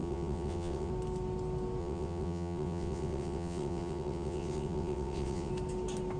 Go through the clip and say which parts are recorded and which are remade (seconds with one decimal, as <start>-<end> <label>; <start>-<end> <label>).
0.0-0.9 remade; 0.9-1.8 recorded; 1.8-5.5 remade; 5.5-6.2 recorded